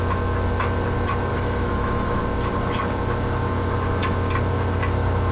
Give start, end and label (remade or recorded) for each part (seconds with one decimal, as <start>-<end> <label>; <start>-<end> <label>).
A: 0.0-1.3 recorded; 1.3-2.2 remade; 2.2-5.3 recorded